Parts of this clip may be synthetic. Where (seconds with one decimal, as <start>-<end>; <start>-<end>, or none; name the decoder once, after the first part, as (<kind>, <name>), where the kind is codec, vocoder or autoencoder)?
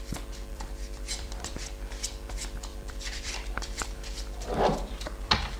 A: 0.5-1.6 (vocoder, BigVGAN v2); 2.7-5.6